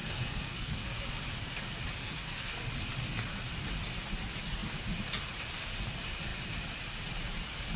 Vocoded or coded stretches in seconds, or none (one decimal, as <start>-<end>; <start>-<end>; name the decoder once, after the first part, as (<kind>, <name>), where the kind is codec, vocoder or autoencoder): 0.0-1.1 (codec, SNAC); 2.0-2.7